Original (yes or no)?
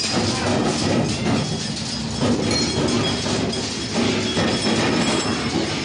yes